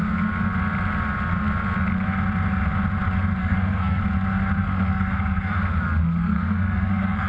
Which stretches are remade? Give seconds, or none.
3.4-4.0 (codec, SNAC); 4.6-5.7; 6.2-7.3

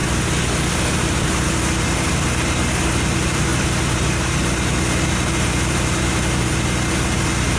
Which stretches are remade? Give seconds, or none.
none

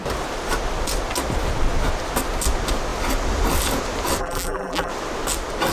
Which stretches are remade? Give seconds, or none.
4.2-4.9 (vocoder, BigVGAN v2)

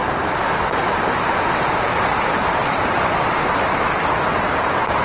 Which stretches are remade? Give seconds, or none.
0.0-0.5 (vocoder, BigVGAN v2); 2.6-5.0

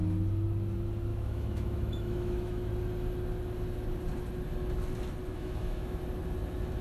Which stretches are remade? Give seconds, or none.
1.1-2.7 (autoencoder, DAC-VAE); 5.3-6.0

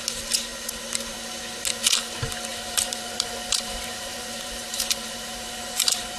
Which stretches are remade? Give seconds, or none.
2.5-6.2 (vocoder, BigVGAN v2)